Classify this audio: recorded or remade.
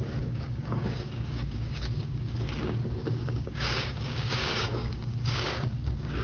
remade